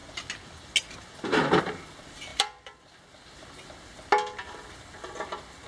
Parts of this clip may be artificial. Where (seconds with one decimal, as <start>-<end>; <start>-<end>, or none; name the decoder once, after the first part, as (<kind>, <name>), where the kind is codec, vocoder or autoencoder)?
none